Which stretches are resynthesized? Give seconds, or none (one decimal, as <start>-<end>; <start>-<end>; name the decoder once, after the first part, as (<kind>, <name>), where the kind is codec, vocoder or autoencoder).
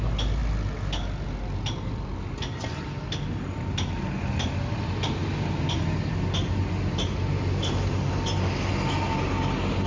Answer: none